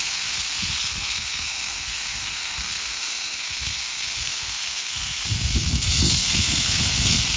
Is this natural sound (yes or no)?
no